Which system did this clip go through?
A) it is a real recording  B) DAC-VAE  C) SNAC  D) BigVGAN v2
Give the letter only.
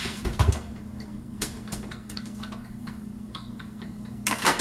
C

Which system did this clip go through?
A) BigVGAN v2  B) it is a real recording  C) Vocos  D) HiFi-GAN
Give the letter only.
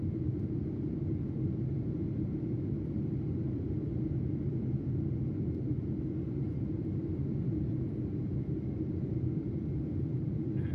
A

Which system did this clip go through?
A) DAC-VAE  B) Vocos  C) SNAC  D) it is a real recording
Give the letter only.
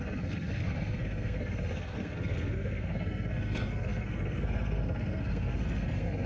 C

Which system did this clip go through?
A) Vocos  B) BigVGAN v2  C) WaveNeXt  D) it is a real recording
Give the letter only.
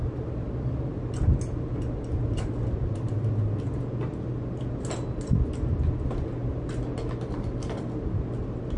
D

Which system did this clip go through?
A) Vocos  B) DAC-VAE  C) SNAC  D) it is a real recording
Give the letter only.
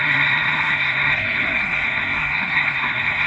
C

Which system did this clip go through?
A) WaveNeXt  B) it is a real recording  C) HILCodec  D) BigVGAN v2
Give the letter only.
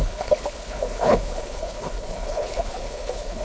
C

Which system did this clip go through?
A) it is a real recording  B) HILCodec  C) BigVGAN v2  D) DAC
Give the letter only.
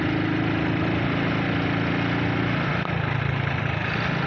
A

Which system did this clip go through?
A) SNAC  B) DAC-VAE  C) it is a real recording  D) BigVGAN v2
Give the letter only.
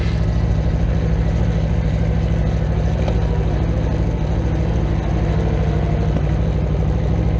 C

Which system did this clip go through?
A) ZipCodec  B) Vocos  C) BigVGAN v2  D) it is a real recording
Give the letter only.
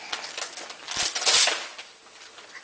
D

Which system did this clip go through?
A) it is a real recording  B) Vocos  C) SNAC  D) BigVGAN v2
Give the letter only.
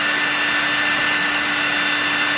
A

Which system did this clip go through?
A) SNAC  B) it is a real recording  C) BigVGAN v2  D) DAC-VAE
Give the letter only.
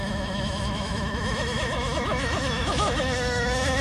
D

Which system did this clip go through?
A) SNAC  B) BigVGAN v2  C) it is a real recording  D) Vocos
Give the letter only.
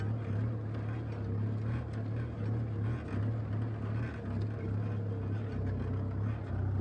C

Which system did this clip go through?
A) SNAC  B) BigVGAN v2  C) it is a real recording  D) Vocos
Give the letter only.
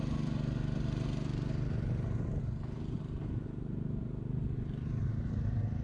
C